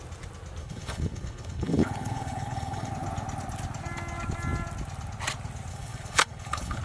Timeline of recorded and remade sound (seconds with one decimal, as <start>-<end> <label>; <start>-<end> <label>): 0.0-0.6 recorded; 0.6-2.9 remade; 2.9-5.7 recorded; 5.7-6.8 remade